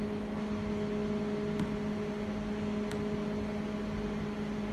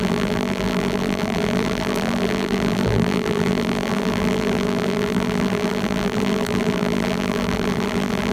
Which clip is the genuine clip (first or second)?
first